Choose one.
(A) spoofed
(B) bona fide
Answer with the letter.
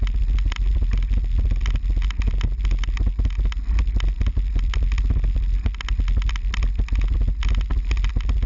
B